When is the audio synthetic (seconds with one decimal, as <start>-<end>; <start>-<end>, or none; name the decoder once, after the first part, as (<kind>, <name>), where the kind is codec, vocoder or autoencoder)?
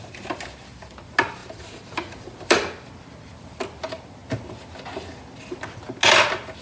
1.4-2.9 (vocoder, BigVGAN v2)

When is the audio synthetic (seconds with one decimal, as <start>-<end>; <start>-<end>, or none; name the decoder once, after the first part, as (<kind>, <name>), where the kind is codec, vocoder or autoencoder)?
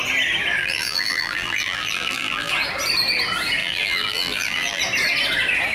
0.6-2.5 (vocoder, BigVGAN v2); 3.6-4.8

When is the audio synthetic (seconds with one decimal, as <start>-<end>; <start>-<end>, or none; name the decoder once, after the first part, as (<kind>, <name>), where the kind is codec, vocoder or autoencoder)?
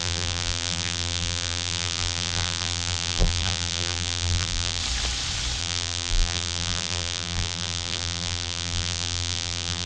0.0-4.8 (vocoder, BigVGAN v2); 5.6-9.9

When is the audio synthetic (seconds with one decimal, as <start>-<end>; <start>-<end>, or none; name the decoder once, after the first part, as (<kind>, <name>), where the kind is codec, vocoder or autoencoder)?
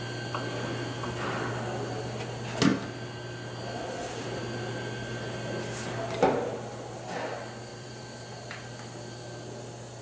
7.7-8.7 (vocoder, BigVGAN v2)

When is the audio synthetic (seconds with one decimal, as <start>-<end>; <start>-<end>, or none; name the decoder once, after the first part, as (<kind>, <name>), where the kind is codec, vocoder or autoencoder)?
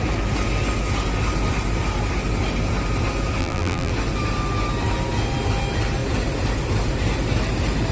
3.4-3.9 (vocoder, BigVGAN v2)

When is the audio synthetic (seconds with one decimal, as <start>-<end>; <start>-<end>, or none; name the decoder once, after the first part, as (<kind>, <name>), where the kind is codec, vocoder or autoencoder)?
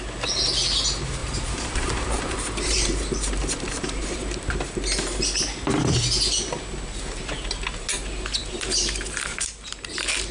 1.2-4.5 (vocoder, BigVGAN v2); 8.4-9.9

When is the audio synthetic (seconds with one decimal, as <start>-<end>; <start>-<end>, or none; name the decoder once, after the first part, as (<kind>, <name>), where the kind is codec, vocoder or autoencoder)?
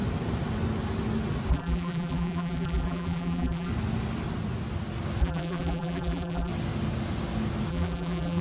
1.5-3.7 (vocoder, BigVGAN v2); 5.2-6.5; 7.7-8.4